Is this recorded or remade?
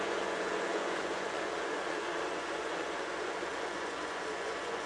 remade